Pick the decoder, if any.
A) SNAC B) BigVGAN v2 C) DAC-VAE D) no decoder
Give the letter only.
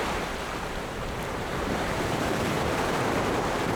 B